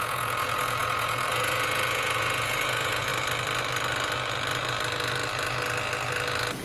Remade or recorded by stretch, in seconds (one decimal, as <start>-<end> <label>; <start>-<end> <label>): 0.0-3.1 remade; 3.1-6.6 recorded